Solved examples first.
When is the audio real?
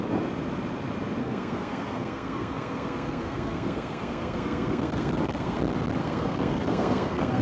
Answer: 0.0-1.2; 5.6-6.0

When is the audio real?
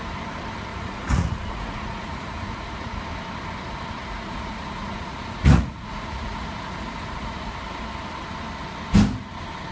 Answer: 0.0-0.7; 3.0-4.0; 7.5-9.7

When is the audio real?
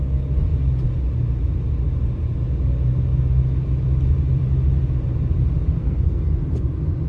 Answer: 0.0-5.8; 6.4-7.1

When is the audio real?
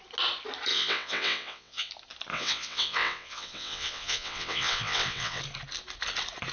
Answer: 0.0-0.7; 1.9-2.3; 5.4-6.5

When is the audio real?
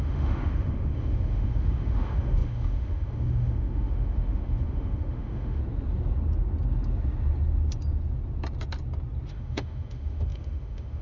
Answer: 5.6-9.3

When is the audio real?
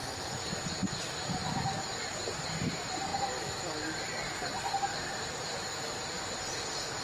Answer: 0.0-3.1; 5.6-7.0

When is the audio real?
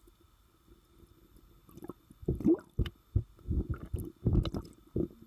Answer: 0.0-5.3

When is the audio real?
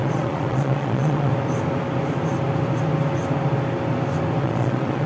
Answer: 1.3-4.4